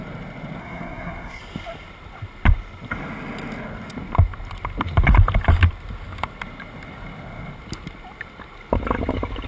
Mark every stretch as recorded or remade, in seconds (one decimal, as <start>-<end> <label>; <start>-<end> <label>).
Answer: 0.0-0.6 recorded; 0.6-1.4 remade; 1.4-9.5 recorded